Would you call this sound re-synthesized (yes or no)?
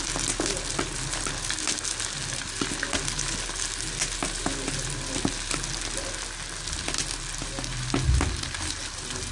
no